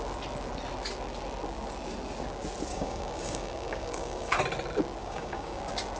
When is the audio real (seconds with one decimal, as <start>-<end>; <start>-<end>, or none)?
0.0-2.7; 4.4-5.0; 5.6-6.0